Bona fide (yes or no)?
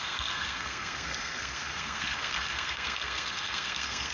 no